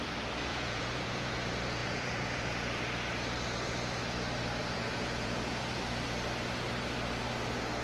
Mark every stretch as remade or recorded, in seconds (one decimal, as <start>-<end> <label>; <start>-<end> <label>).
0.0-0.5 recorded; 0.5-1.3 remade; 1.3-1.8 recorded; 1.8-2.8 remade; 2.8-4.6 recorded; 4.6-5.6 remade; 5.6-7.8 recorded